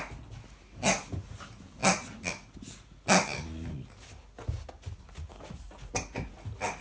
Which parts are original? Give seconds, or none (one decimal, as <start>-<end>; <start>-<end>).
0.0-6.8